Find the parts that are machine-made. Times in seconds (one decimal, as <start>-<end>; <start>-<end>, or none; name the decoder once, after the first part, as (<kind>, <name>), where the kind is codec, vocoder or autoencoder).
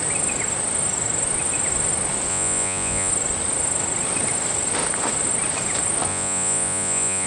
2.3-3.1 (vocoder, Vocos); 6.1-7.3